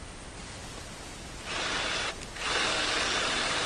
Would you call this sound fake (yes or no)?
no